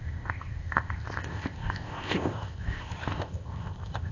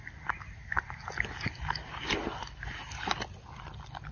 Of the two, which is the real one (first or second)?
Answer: second